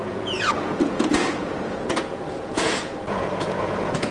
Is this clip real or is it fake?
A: fake